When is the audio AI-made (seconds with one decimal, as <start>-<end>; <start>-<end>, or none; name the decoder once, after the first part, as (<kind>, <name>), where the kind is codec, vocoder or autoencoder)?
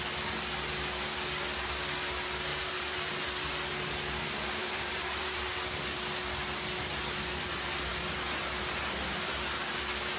2.5-3.1 (vocoder, BigVGAN v2); 4.6-5.4